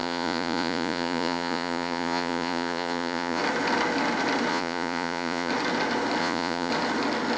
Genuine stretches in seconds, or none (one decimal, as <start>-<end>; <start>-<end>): 3.4-4.5; 5.5-6.2; 6.7-7.4

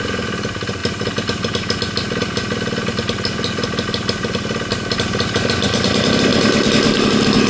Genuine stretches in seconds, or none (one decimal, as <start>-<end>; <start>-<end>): 0.0-7.5

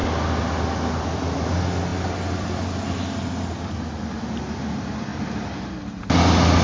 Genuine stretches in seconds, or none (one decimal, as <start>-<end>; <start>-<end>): 0.0-6.6

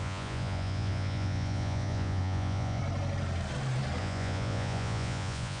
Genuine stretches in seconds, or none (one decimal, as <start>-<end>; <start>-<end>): 2.8-4.0

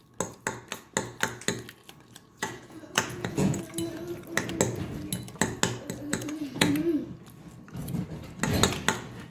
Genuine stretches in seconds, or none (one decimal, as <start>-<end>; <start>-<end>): 0.0-2.3; 3.6-6.1; 6.7-9.3

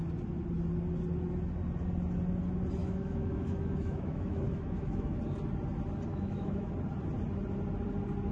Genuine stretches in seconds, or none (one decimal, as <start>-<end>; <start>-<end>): 0.0-2.8; 5.2-6.1; 6.7-8.3

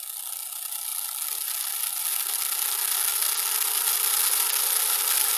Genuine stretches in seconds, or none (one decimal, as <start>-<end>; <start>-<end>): 0.0-5.4

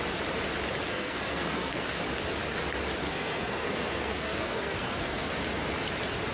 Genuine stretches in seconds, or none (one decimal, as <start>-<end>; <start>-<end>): 0.0-0.9; 2.0-3.0; 5.3-6.3